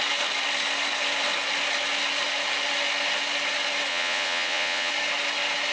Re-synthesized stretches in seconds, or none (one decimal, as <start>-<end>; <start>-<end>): 3.9-4.9